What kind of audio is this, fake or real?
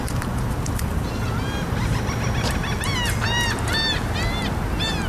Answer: real